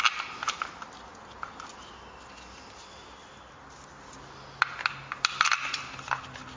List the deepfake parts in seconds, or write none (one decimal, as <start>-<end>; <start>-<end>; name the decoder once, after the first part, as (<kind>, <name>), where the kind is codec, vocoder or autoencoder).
none